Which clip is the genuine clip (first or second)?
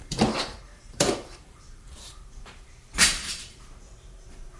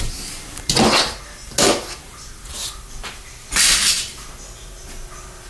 second